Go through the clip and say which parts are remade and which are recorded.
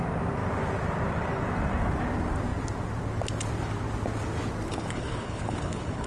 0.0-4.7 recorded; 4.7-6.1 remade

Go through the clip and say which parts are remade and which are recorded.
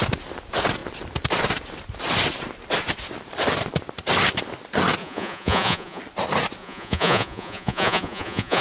0.0-5.0 recorded; 5.0-6.0 remade; 6.0-6.6 recorded; 6.6-8.6 remade